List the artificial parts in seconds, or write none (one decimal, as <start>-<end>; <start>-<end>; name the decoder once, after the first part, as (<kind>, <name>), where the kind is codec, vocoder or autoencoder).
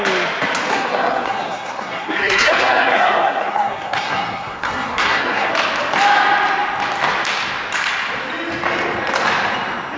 0.7-5.5 (codec, SNAC)